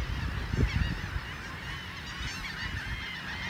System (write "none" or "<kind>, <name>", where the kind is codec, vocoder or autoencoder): none